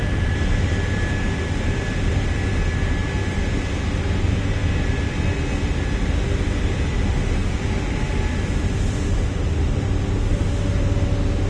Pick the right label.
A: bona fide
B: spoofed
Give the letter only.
A